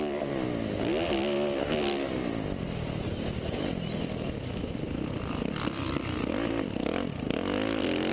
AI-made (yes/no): no